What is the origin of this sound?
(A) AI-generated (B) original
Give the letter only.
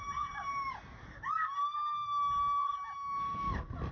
B